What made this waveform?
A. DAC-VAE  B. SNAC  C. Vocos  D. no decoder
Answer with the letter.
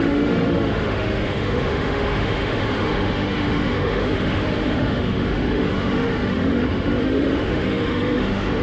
A